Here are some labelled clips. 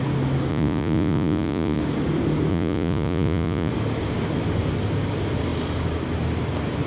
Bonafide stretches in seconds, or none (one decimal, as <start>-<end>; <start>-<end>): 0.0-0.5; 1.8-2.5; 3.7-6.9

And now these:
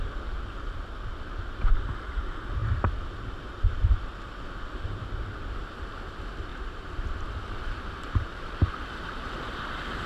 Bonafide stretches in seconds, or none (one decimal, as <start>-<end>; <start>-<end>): 0.0-1.1; 1.6-6.5; 8.7-10.1

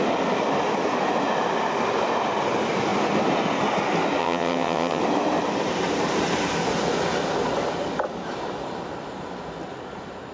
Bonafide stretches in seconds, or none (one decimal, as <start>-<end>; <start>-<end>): 0.0-4.2; 5.0-10.3

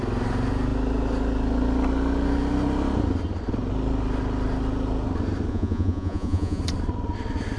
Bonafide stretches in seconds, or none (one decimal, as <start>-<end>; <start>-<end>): 0.0-5.5; 6.6-7.6